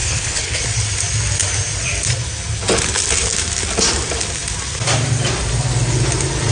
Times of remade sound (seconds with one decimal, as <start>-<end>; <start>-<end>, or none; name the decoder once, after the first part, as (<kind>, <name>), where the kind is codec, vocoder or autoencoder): 0.0-0.6 (codec, HILCodec)